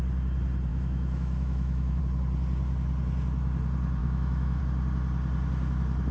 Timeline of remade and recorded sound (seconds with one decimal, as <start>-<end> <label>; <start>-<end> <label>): 0.0-0.7 recorded; 0.7-2.0 remade; 2.0-4.0 recorded; 4.0-4.6 remade; 4.6-6.1 recorded